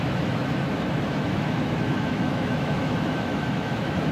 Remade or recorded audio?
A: remade